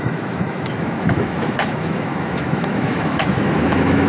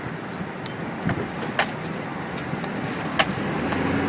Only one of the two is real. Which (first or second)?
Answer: second